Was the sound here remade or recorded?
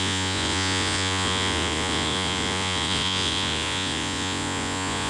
remade